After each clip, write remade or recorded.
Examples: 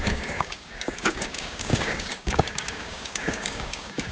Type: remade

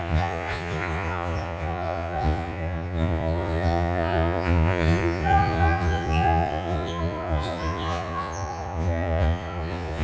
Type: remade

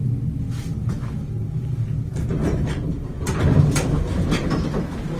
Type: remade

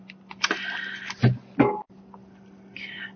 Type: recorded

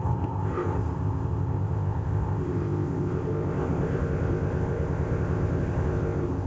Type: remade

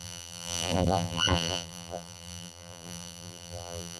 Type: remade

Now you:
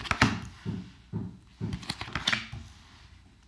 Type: recorded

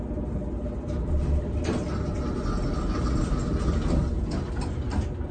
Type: recorded